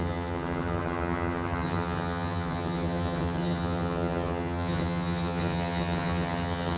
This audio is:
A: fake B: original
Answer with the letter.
A